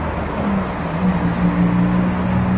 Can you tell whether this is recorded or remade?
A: recorded